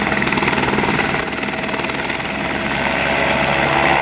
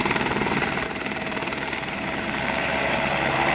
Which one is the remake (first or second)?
second